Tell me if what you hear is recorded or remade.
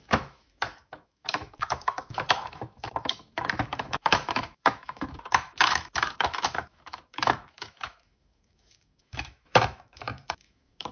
remade